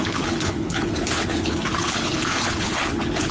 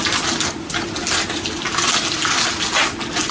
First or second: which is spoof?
first